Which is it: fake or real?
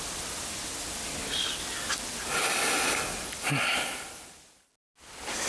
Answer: real